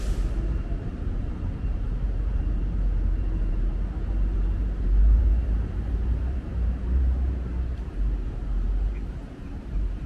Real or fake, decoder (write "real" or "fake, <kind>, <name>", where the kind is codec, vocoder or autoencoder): fake, vocoder, BigVGAN v2